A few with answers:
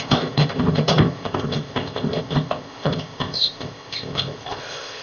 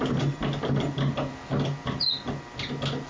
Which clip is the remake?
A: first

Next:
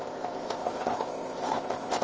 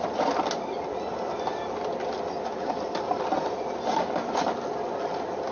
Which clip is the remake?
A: first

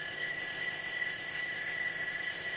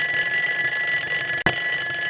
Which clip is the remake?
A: first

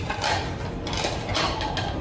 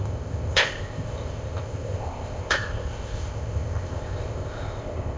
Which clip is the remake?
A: second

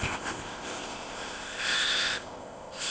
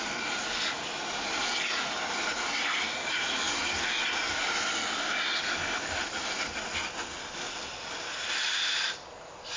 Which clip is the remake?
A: first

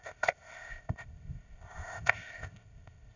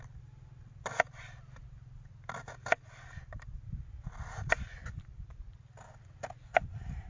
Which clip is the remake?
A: first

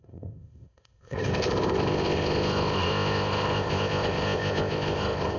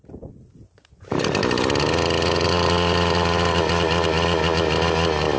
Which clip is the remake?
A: first